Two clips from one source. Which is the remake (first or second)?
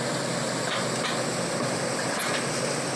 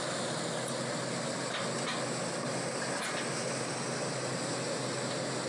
first